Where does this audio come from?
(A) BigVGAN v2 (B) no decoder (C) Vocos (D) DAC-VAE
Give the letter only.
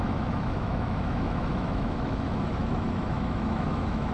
D